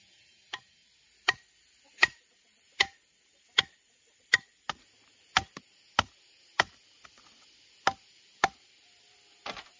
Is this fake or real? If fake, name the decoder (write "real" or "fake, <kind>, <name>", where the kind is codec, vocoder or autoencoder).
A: real